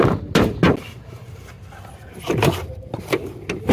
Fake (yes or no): no